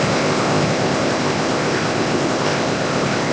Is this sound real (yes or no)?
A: no